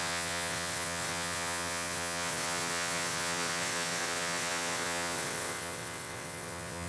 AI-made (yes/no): yes